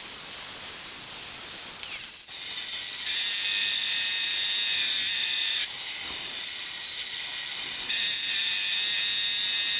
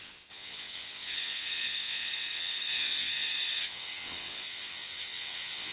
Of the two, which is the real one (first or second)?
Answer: first